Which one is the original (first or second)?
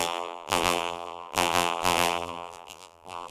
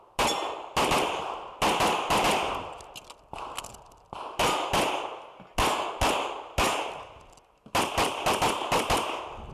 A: second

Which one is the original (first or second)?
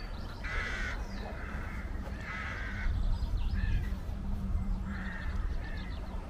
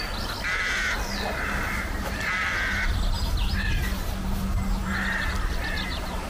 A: second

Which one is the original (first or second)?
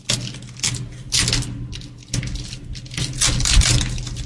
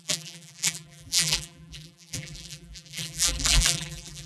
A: first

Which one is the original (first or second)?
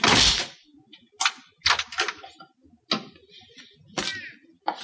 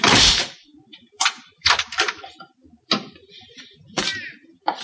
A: first